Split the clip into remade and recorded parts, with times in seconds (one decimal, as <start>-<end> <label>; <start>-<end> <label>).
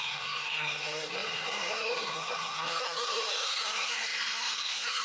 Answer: 0.0-5.0 remade